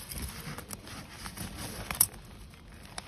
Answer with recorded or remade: remade